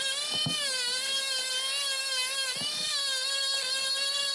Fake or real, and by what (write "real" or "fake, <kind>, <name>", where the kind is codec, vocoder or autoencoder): real